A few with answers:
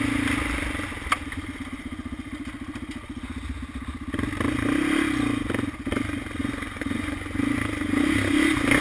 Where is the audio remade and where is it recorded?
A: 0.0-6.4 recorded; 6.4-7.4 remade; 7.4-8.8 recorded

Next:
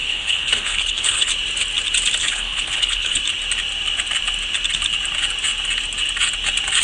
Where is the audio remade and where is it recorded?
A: 0.0-1.3 remade; 1.3-2.2 recorded; 2.2-3.2 remade; 3.2-6.8 recorded

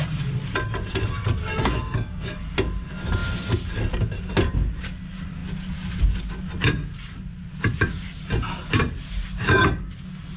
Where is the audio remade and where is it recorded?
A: 0.0-1.6 recorded; 1.6-2.4 remade; 2.4-10.4 recorded

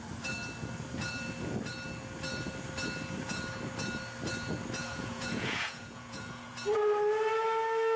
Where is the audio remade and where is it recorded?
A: 0.0-4.8 recorded; 4.8-6.5 remade; 6.5-8.0 recorded

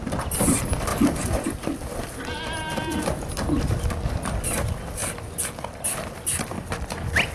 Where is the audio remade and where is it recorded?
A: 0.0-7.3 recorded

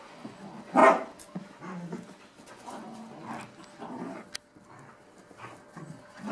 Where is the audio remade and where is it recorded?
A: 0.0-0.8 remade; 0.8-2.5 recorded; 2.5-3.0 remade; 3.0-5.8 recorded; 5.8-6.3 remade

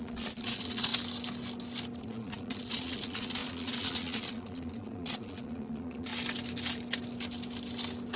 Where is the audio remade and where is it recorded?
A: 0.0-0.9 remade; 0.9-2.0 recorded; 2.0-6.1 remade; 6.1-8.2 recorded